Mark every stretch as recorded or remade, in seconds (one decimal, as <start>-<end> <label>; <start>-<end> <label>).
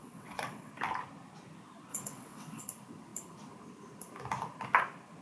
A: 0.0-0.7 remade; 0.7-1.9 recorded; 1.9-2.6 remade; 2.6-5.2 recorded